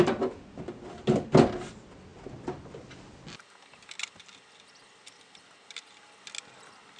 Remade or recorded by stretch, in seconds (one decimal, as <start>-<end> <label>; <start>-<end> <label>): 0.0-7.0 recorded